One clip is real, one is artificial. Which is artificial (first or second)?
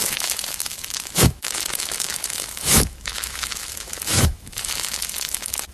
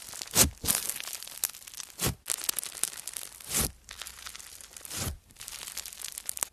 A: first